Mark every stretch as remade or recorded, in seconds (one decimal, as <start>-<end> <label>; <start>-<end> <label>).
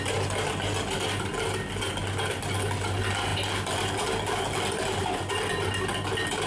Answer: 0.0-6.5 recorded